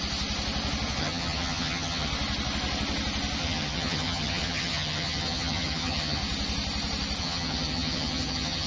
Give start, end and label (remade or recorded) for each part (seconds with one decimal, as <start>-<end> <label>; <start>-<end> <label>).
0.0-1.0 recorded; 1.0-2.1 remade; 2.1-3.4 recorded; 3.4-6.2 remade; 6.2-7.2 recorded; 7.2-8.7 remade